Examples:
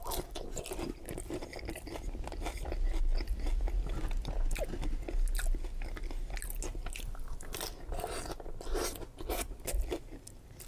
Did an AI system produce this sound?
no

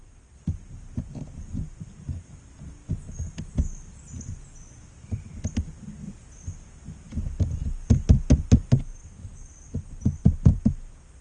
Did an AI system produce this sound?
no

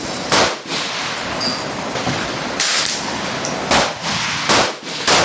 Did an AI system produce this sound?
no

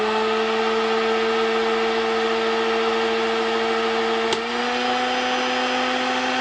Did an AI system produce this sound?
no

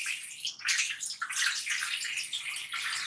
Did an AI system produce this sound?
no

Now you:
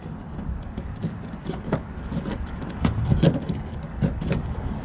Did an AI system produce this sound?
yes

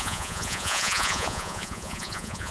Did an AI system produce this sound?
yes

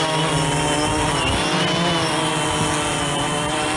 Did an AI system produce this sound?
no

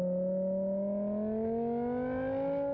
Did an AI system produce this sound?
no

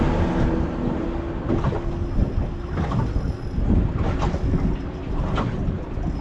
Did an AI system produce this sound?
no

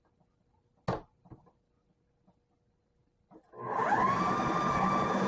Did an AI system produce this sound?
no